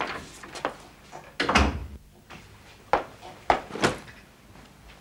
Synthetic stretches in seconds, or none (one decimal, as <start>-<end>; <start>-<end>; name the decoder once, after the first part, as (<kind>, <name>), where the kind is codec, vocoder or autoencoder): none